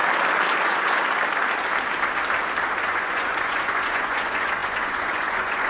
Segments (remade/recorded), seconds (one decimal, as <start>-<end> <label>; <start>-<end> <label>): 0.0-0.6 recorded; 0.6-1.0 remade; 1.0-2.8 recorded; 2.8-5.7 remade